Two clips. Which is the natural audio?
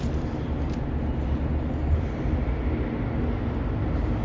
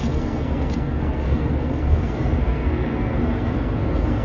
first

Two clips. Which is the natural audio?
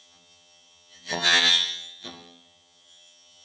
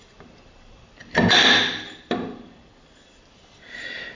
second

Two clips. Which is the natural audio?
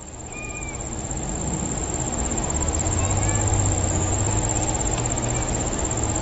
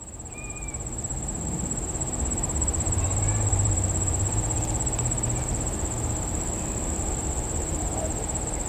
first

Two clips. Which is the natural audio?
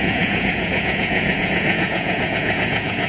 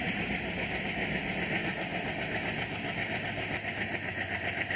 second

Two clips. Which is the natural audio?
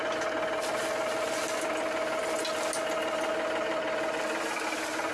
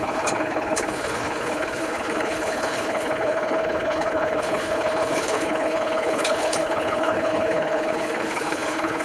first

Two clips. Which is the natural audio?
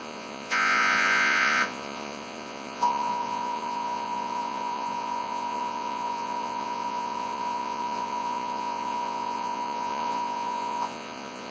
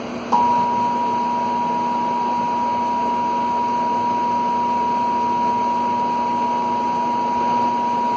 second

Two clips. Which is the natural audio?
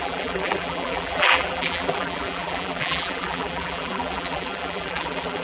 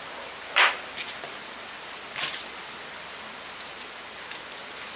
second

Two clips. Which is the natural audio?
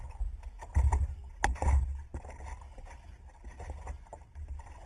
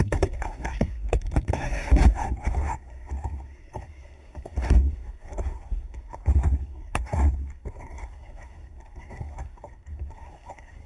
first